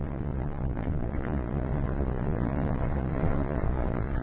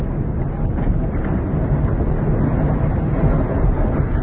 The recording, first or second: second